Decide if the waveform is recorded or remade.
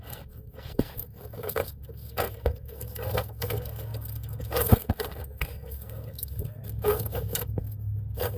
remade